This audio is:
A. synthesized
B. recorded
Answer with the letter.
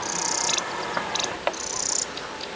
B